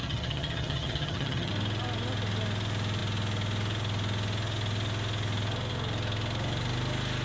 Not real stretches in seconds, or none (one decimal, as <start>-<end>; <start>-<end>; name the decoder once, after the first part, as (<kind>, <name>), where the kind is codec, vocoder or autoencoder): 0.0-1.5 (vocoder, HiFi-GAN)